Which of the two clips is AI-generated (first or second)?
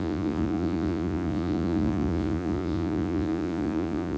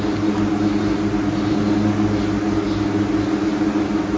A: first